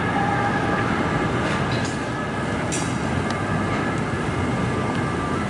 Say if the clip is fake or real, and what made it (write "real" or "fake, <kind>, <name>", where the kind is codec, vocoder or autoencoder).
real